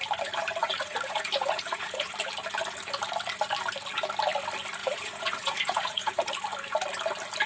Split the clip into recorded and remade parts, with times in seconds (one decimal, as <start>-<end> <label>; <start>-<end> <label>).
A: 0.0-0.6 recorded; 0.6-2.1 remade; 2.1-4.8 recorded; 4.8-6.3 remade; 6.3-7.5 recorded